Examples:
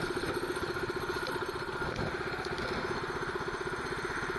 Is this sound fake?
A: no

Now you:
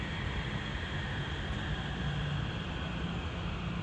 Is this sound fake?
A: no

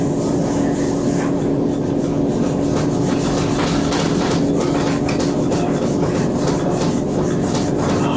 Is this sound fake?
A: no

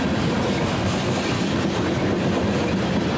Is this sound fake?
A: no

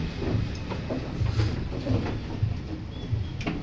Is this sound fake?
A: no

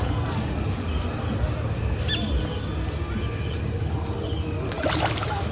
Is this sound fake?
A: no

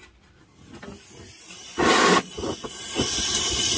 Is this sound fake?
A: no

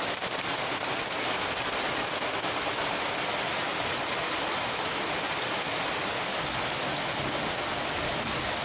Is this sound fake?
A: no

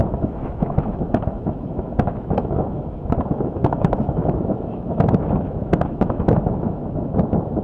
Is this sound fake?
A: yes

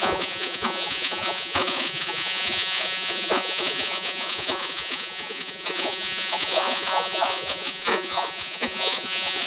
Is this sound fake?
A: yes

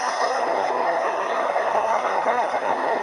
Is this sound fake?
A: yes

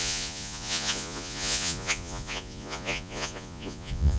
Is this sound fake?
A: yes